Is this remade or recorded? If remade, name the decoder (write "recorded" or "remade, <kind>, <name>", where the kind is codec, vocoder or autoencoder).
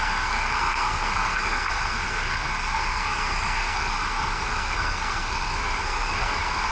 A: remade, codec, SNAC